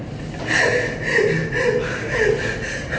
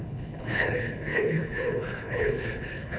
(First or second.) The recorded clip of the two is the first